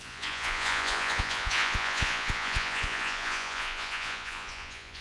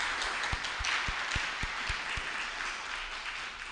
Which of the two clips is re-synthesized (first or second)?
first